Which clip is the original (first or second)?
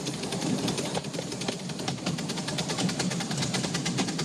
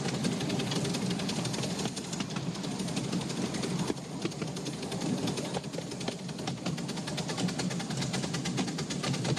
second